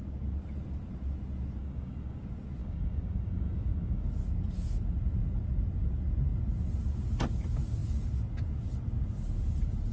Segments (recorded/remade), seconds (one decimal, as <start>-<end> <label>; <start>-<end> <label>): 0.0-1.6 recorded; 1.6-2.2 remade; 2.2-2.6 recorded; 2.6-4.1 remade; 4.1-9.9 recorded